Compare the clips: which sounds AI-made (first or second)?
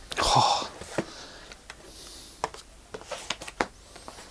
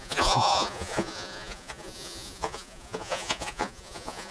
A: second